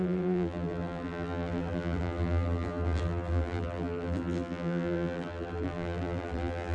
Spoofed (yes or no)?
yes